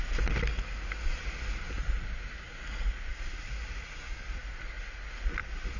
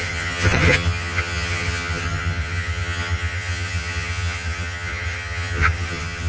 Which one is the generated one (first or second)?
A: second